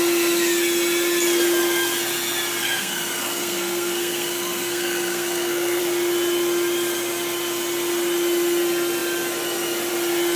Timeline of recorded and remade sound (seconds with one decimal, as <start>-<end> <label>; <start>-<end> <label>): 0.0-2.6 recorded; 2.6-5.8 remade; 5.8-10.4 recorded